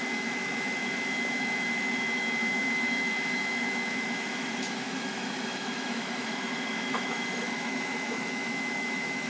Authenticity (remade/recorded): remade